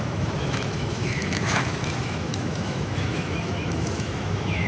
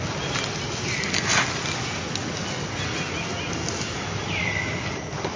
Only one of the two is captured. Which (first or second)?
second